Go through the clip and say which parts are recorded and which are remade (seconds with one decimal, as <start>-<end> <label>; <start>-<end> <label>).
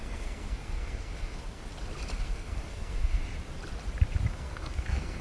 0.0-1.6 remade; 1.6-2.2 recorded; 2.2-3.2 remade; 3.2-4.3 recorded; 4.3-5.2 remade